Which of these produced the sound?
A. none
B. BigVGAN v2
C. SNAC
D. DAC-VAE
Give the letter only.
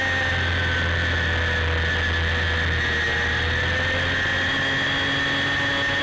A